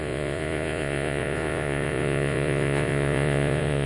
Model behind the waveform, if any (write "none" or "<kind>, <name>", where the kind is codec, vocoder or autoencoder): vocoder, Vocos